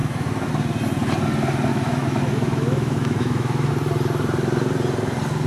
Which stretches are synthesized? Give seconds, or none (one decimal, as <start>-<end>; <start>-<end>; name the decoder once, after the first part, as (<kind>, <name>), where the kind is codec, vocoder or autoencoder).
0.0-0.5 (autoencoder, DAC-VAE); 1.7-3.7